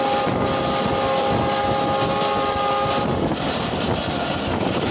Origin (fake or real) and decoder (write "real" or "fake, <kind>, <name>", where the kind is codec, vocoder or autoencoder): real